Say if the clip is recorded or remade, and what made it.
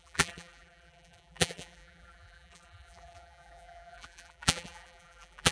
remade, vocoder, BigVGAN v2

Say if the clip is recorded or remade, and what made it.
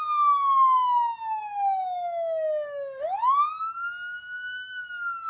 recorded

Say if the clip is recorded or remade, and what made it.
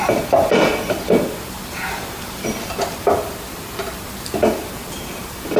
remade, vocoder, BigVGAN v2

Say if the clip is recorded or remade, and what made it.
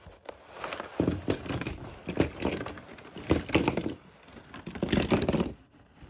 remade, vocoder, BigVGAN v2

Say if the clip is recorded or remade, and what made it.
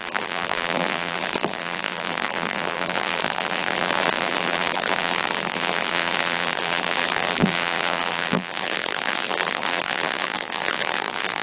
remade, vocoder, BigVGAN v2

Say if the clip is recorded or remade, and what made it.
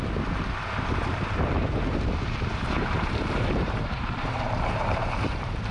remade, vocoder, BigVGAN v2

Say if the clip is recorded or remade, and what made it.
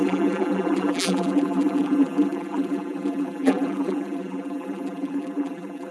remade, vocoder, BigVGAN v2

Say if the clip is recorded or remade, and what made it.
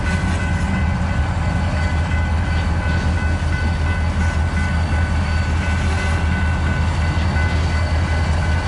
recorded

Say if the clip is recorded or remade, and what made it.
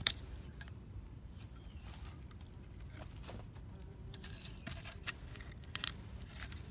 remade, vocoder, BigVGAN v2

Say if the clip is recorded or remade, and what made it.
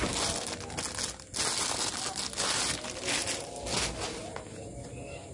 recorded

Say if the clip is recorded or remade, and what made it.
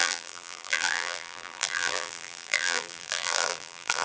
remade, vocoder, BigVGAN v2